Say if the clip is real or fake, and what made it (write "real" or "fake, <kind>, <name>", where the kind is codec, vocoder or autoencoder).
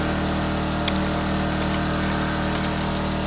real